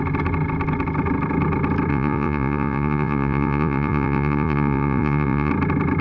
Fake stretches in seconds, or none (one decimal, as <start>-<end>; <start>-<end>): 1.9-5.5